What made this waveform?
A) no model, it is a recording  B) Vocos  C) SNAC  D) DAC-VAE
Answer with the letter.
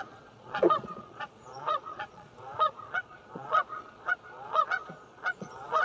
B